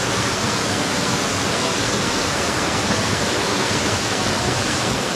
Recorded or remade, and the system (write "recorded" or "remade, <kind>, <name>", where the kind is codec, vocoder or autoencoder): remade, codec, SNAC